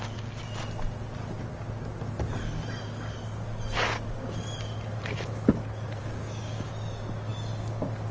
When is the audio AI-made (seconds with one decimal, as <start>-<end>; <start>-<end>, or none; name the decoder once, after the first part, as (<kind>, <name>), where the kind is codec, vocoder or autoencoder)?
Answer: 6.0-6.7 (codec, DAC)